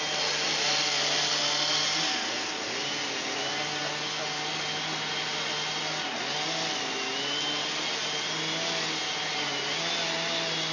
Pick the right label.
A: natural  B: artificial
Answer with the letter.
A